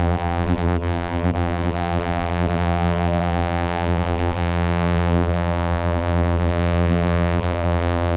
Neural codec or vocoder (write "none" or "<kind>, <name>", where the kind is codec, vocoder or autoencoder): vocoder, BigVGAN v2